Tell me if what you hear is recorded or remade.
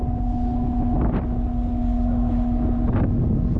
recorded